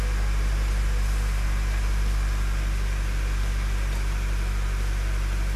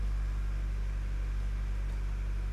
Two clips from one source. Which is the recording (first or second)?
second